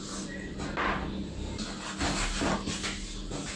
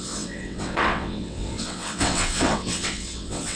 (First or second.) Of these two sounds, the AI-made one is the second